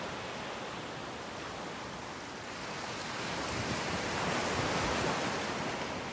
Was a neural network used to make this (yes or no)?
no